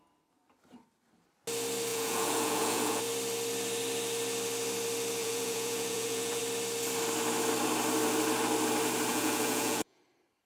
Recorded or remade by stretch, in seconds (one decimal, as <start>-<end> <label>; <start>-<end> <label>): 0.0-1.9 recorded; 1.9-3.0 remade; 3.0-5.2 recorded; 5.2-6.4 remade; 6.4-9.1 recorded; 9.1-10.0 remade; 10.0-10.5 recorded